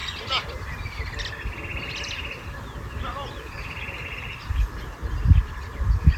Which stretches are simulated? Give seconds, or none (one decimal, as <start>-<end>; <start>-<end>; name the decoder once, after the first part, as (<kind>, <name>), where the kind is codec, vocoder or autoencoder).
0.0-6.2 (vocoder, BigVGAN v2)